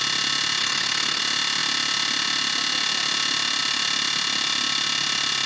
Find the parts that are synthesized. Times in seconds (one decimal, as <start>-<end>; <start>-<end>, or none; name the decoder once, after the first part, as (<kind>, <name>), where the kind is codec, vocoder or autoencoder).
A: 0.6-1.2 (codec, SNAC)